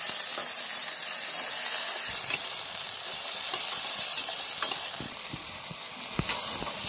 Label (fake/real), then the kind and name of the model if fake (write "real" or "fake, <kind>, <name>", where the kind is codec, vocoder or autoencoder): fake, vocoder, BigVGAN v2